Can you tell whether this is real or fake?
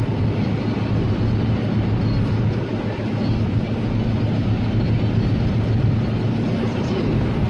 real